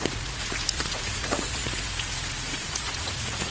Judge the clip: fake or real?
fake